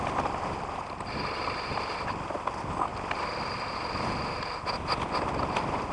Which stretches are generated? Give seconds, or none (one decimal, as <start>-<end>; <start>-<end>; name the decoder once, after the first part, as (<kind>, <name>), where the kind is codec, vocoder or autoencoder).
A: none